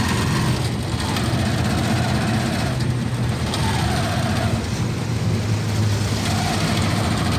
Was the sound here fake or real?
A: real